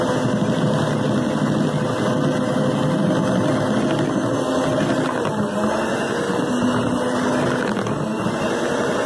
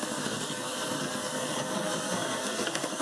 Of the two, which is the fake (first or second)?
second